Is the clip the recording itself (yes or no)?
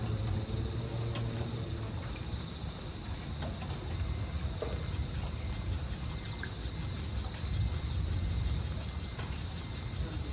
yes